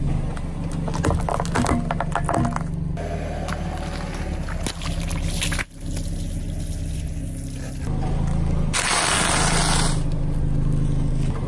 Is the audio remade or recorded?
recorded